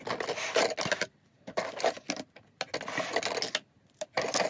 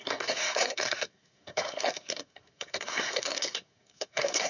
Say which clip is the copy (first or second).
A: second